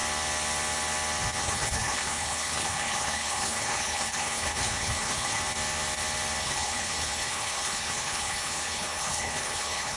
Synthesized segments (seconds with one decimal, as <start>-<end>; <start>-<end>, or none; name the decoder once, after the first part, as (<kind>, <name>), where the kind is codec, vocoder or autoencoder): 1.4-5.4 (codec, HILCodec); 6.4-10.0